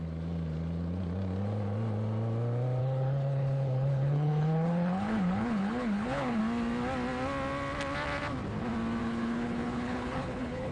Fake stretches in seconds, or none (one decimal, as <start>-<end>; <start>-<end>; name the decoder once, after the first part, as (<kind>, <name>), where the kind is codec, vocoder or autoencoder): 2.8-6.4 (codec, HILCodec); 9.0-10.7